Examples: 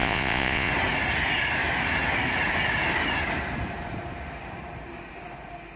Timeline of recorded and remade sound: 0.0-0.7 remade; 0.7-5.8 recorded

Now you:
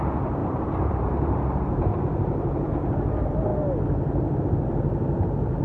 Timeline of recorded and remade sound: 0.0-0.4 recorded; 0.4-2.7 remade; 2.7-5.6 recorded

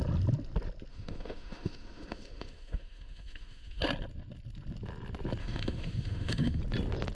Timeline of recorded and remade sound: 0.0-0.9 recorded; 0.9-3.8 remade; 3.8-5.4 recorded; 5.4-6.6 remade; 6.6-7.1 recorded

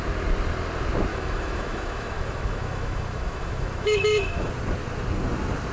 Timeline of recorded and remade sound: 0.0-1.1 recorded; 1.1-4.5 remade; 4.5-5.7 recorded

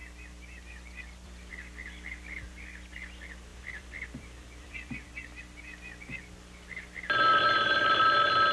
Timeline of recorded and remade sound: 0.0-1.5 remade; 1.5-3.5 recorded; 3.5-5.4 remade; 5.4-8.5 recorded

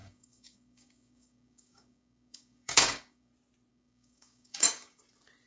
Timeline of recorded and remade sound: 0.0-3.3 remade; 3.3-3.7 recorded; 3.7-5.0 remade; 5.0-5.5 recorded